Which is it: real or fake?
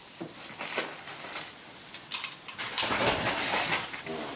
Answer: real